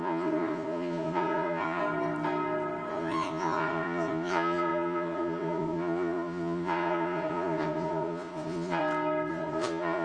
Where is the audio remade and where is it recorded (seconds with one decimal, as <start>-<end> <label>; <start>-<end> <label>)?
0.0-1.8 remade; 1.8-2.9 recorded; 2.9-8.8 remade; 8.8-9.3 recorded; 9.3-10.0 remade